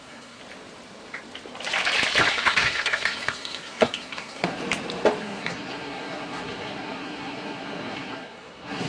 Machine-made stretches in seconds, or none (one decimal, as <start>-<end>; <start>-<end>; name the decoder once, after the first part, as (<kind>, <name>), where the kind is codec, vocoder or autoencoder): 0.0-0.4 (codec, SNAC); 2.3-4.6; 5.2-8.9